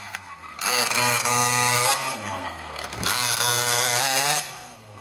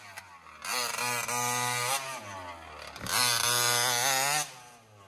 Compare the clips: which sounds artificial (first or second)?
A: first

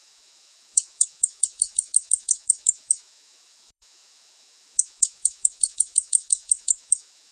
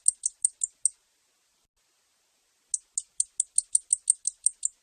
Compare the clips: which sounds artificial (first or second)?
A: first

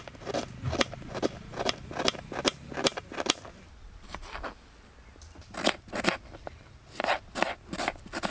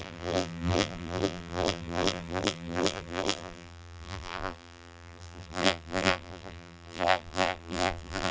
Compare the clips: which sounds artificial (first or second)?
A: second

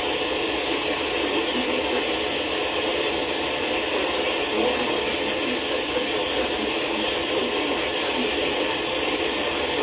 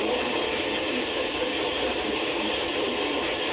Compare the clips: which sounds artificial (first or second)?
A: second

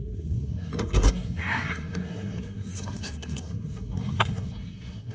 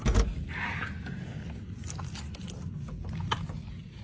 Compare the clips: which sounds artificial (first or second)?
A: first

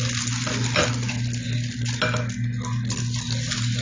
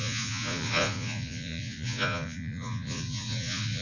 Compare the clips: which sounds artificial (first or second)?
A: second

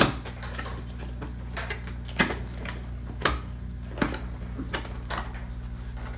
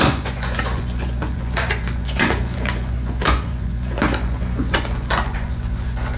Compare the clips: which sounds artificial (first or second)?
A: second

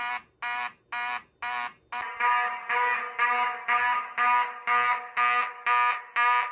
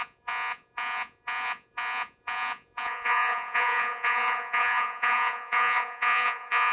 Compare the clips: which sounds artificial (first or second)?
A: second